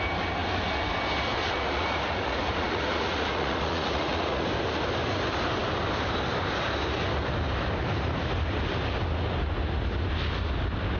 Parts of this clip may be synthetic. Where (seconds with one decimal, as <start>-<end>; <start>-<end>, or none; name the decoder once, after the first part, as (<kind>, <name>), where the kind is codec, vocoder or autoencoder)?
1.4-4.5 (vocoder, Vocos)